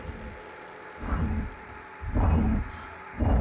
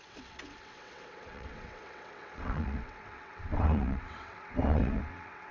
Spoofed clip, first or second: second